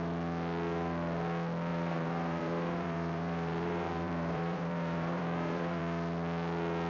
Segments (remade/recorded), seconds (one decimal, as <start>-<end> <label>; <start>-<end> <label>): 0.0-1.7 recorded; 1.7-5.8 remade; 5.8-6.9 recorded